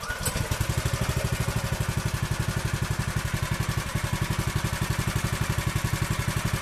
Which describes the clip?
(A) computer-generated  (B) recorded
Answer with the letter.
B